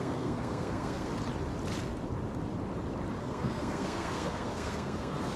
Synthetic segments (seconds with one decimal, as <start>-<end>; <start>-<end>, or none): 0.0-1.1; 3.2-5.4